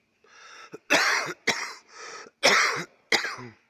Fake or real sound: real